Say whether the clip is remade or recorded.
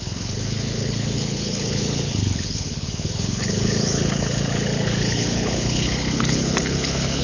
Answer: remade